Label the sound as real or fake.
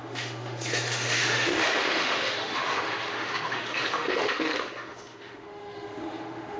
fake